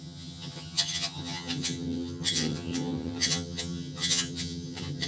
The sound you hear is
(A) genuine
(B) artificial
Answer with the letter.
B